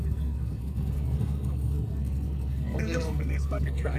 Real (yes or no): no